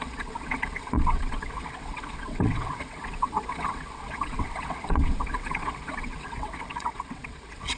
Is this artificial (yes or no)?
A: yes